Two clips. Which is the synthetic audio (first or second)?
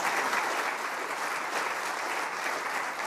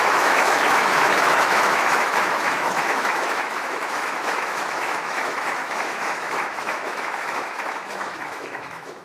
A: second